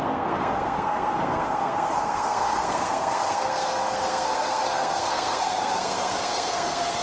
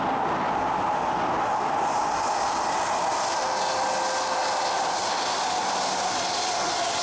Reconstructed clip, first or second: first